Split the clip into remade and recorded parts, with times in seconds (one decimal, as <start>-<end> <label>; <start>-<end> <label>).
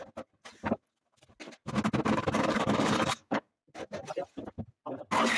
0.0-2.2 recorded; 2.2-3.5 remade; 3.5-5.4 recorded